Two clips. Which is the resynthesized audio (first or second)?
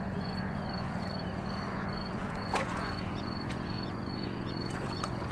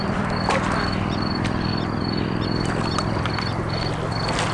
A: first